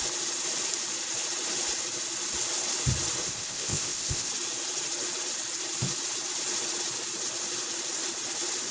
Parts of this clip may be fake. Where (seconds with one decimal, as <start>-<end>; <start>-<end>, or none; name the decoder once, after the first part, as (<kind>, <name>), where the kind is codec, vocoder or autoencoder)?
3.2-4.3 (codec, ZipCodec)

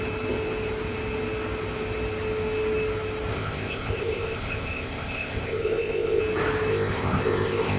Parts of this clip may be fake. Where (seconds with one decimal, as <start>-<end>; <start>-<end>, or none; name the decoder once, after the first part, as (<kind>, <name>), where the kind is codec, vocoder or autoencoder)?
3.3-6.2 (codec, ZipCodec); 6.7-7.8

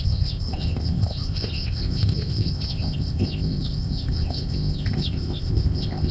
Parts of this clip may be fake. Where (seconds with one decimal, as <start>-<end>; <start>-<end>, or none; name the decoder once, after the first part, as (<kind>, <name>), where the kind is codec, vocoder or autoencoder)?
0.0-6.1 (codec, ZipCodec)

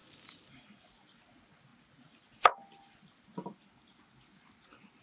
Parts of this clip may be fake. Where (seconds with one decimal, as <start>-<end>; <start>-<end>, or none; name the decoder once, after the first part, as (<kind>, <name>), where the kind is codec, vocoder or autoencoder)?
none

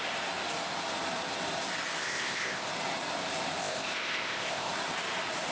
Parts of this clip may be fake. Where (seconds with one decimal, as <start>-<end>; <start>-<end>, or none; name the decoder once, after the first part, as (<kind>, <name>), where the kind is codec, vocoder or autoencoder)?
2.0-2.7 (codec, ZipCodec); 3.6-4.7

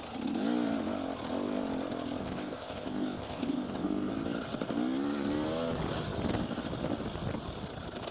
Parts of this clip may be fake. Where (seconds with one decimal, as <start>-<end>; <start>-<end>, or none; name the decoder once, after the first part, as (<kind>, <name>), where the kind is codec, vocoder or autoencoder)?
2.2-4.1 (codec, ZipCodec)

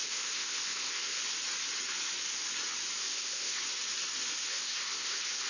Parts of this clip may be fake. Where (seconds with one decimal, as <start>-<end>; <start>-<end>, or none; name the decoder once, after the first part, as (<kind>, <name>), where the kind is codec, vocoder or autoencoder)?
0.0-1.2 (codec, ZipCodec); 3.0-3.6; 4.5-5.5

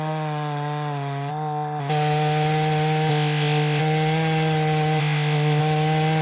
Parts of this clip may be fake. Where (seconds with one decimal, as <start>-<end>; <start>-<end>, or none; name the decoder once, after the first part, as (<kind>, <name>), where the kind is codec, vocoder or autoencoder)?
1.3-1.8 (codec, ZipCodec); 3.1-3.8; 5.0-5.6